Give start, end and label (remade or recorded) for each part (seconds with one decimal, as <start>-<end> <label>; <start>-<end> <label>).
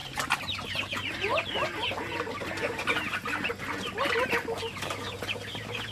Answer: 0.0-3.5 remade; 3.5-5.9 recorded